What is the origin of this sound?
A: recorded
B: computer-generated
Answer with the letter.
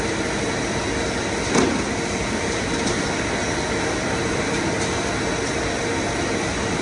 A